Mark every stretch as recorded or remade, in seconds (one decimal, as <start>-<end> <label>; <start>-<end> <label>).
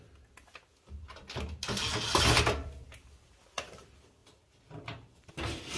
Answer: 0.0-5.8 recorded